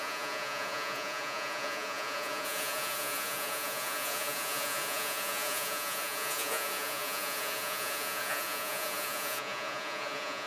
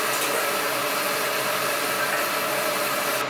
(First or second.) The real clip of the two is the second